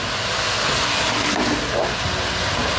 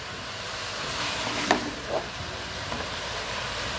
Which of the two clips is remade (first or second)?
second